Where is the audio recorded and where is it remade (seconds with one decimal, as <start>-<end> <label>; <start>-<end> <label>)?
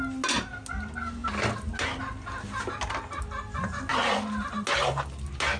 0.0-5.6 recorded